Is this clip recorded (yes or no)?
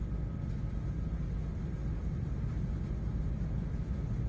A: yes